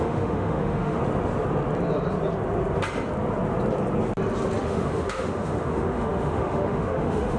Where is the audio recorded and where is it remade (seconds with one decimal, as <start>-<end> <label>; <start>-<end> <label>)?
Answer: 0.0-1.0 remade; 1.0-4.6 recorded; 4.6-7.4 remade